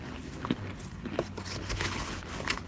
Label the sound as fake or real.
real